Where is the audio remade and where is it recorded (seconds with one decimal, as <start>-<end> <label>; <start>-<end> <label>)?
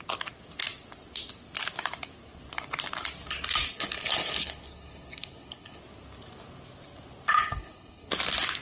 0.0-3.7 recorded; 3.7-5.8 remade; 5.8-7.3 recorded; 7.3-8.1 remade; 8.1-8.6 recorded